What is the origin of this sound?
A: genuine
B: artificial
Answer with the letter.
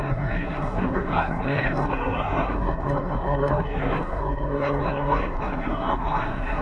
B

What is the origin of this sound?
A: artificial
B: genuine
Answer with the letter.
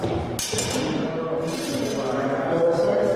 B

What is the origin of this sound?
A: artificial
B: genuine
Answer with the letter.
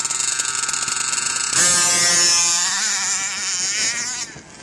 B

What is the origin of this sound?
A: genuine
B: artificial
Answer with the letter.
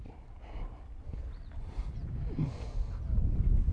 A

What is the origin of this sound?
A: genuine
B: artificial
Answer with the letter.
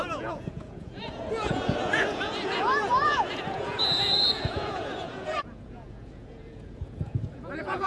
B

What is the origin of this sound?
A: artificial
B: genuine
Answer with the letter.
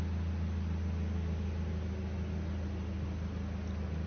B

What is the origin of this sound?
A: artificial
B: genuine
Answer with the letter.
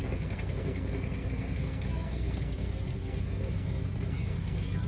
A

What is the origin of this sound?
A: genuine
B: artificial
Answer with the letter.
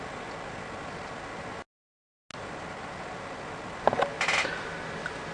A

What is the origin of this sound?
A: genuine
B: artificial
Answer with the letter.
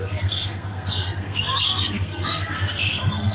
B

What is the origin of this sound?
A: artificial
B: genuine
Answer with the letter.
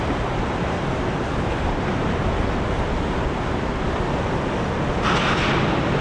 B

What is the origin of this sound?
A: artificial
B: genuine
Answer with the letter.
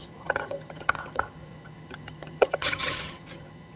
A